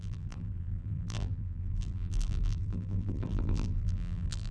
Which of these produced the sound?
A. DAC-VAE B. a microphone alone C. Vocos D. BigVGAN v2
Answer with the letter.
D